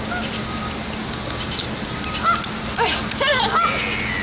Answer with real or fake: real